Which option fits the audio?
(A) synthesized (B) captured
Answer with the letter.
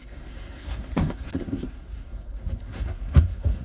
A